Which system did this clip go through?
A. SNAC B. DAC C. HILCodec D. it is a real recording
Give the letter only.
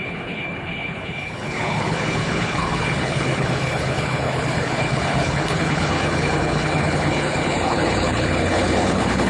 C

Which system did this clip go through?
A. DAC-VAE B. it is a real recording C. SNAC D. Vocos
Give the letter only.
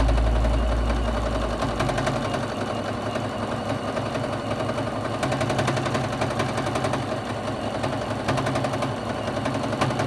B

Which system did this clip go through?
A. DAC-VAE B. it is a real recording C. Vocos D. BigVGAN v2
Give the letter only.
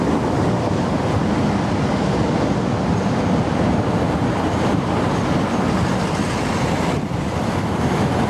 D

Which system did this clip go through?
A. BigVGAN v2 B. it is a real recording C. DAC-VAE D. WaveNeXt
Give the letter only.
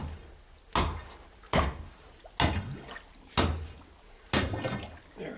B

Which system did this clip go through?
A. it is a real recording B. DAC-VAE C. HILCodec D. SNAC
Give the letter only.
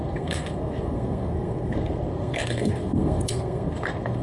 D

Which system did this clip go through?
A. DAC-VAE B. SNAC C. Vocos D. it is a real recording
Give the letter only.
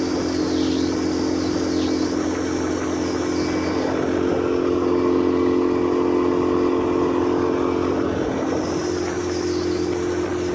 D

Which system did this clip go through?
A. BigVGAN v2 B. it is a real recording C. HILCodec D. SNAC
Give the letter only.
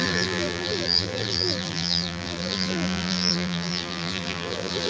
A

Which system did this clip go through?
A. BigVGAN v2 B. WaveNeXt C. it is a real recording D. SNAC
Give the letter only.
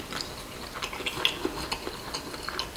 C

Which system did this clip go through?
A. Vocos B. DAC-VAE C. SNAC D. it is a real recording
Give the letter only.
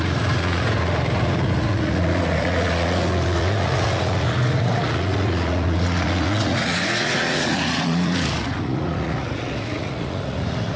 A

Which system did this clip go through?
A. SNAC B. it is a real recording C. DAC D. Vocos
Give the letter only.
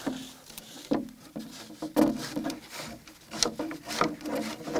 B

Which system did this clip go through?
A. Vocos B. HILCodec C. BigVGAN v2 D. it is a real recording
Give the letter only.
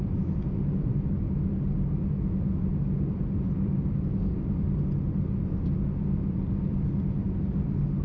D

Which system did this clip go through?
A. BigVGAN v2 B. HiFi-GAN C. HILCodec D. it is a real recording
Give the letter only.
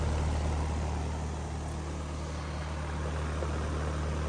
D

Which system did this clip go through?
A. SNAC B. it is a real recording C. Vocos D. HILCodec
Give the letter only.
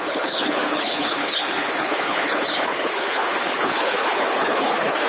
D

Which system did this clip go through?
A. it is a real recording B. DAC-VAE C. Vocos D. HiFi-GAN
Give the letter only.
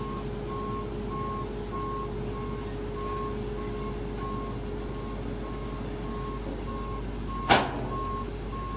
A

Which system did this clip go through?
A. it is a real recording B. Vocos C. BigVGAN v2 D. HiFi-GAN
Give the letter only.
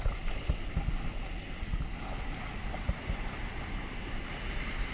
A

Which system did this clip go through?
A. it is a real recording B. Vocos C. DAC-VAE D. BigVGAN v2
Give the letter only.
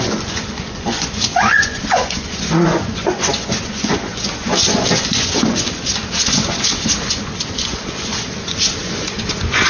B